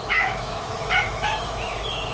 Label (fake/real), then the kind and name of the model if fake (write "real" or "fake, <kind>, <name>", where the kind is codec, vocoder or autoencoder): fake, autoencoder, DAC-VAE